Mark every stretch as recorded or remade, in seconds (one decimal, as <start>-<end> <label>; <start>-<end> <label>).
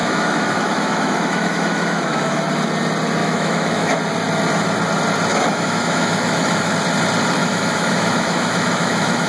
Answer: 0.0-2.4 remade; 2.4-3.2 recorded; 3.2-4.0 remade; 4.0-5.3 recorded; 5.3-6.7 remade; 6.7-7.4 recorded; 7.4-9.3 remade